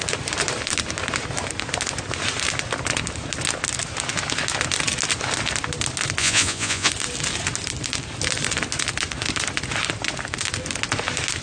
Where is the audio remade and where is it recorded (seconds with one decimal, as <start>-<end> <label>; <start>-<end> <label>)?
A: 0.0-6.2 recorded; 6.2-6.9 remade; 6.9-11.4 recorded